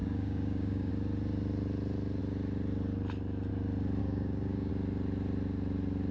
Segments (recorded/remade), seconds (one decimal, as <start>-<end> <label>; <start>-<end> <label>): 0.0-0.9 remade; 0.9-4.0 recorded; 4.0-4.7 remade; 4.7-6.1 recorded

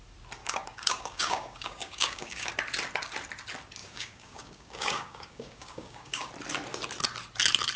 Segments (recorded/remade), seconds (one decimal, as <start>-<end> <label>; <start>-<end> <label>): 0.0-0.4 recorded; 0.4-2.5 remade; 2.5-3.8 recorded; 3.8-6.3 remade; 6.3-7.8 recorded